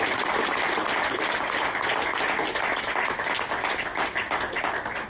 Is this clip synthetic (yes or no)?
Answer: no